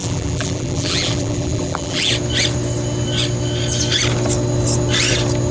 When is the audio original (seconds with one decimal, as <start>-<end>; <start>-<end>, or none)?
2.1-5.5